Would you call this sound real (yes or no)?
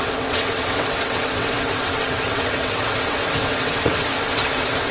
no